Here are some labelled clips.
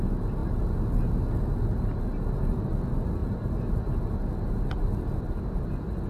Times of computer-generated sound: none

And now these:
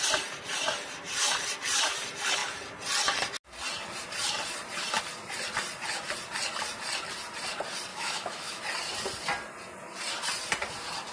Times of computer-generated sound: 7.9-8.6 (autoencoder, DAC-VAE)

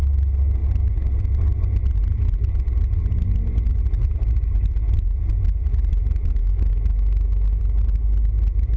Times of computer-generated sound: 6.4-7.6 (autoencoder, DAC-VAE)

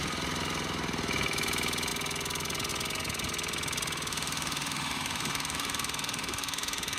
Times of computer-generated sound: 4.1-7.0 (autoencoder, DAC-VAE)

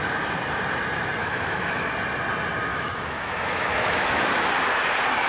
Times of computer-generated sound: 1.2-1.9 (autoencoder, DAC-VAE); 2.7-4.5

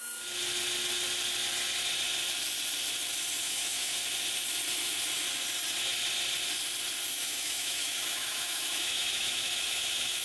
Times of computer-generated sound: 3.4-4.0 (autoencoder, DAC-VAE); 7.1-10.2